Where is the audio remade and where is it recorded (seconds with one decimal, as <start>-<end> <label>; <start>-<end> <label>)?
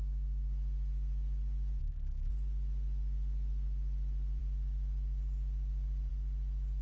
0.0-1.8 recorded; 1.8-2.3 remade; 2.3-6.8 recorded